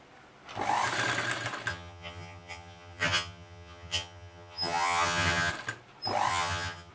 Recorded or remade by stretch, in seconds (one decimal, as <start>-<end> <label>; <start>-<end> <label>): 0.0-1.7 recorded; 1.7-5.5 remade; 5.5-6.3 recorded; 6.3-6.9 remade